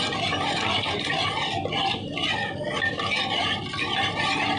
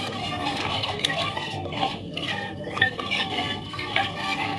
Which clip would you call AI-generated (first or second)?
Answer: second